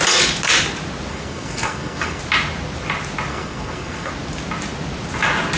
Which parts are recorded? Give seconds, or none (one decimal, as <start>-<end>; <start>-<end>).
0.0-1.1; 2.2-3.3; 4.1-5.6